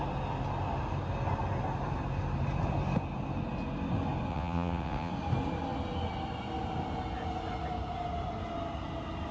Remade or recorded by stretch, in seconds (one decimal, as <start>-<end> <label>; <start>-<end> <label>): 0.0-4.3 recorded; 4.3-5.1 remade; 5.1-9.3 recorded